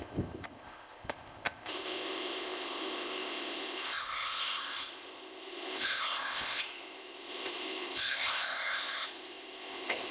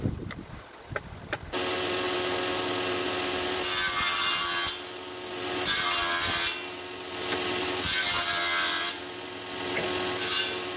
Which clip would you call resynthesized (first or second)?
first